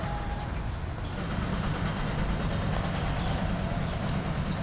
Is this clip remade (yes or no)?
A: no